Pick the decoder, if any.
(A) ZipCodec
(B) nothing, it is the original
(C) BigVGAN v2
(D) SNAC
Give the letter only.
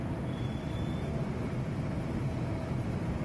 C